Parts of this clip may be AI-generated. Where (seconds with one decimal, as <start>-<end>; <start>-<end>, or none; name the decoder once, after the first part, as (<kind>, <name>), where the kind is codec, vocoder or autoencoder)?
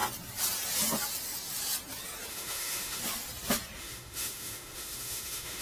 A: 2.3-3.0 (autoencoder, DAC-VAE); 3.8-5.6